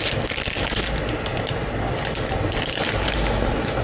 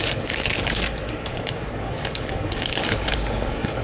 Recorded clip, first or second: first